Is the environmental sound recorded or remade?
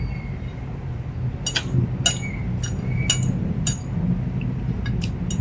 recorded